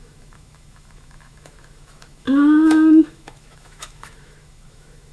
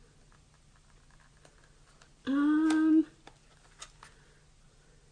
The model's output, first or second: first